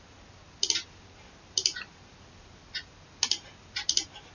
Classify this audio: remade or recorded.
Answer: recorded